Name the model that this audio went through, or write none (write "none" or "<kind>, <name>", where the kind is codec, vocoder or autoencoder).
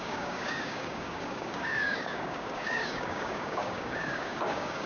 codec, DAC